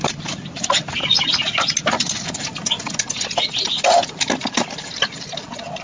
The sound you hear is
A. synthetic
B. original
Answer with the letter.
B